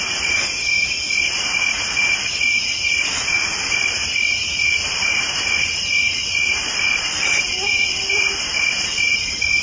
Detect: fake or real fake